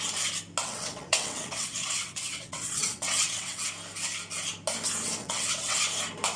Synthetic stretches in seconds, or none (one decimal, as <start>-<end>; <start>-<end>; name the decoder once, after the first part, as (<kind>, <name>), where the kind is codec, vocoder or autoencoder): 0.6-3.7 (vocoder, WaveNeXt); 5.2-5.8